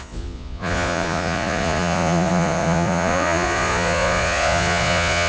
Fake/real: fake